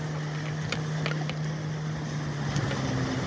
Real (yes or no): yes